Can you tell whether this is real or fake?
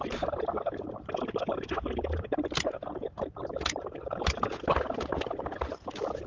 real